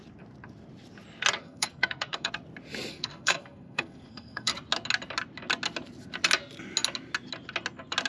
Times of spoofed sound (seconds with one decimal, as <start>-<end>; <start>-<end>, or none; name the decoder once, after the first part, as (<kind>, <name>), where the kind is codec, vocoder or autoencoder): 1.4-2.3 (codec, SNAC); 2.9-4.5

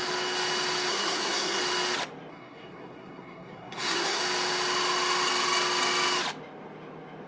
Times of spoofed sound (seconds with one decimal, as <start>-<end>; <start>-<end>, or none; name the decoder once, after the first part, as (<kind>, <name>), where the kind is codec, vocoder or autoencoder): 0.9-1.6 (codec, SNAC); 2.3-4.2

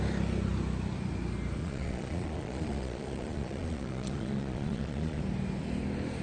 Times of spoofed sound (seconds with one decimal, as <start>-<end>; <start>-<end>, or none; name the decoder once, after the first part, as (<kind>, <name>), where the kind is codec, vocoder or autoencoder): 1.6-5.2 (vocoder, Vocos)

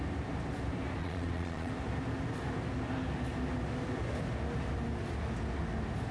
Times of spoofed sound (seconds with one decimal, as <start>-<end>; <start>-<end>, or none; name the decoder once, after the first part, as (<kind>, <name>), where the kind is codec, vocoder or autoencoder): 1.0-1.7 (vocoder, Vocos)

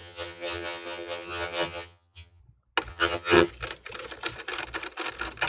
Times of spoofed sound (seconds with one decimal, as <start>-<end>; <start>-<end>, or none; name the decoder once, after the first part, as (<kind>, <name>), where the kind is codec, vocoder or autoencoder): 0.0-2.4 (vocoder, HiFi-GAN); 2.9-3.5